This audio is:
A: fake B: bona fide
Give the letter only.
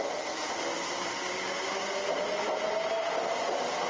B